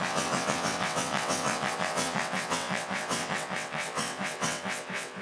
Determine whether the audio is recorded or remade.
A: remade